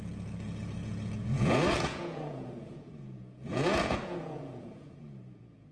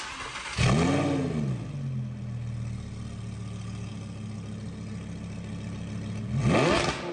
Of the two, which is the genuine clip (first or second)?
second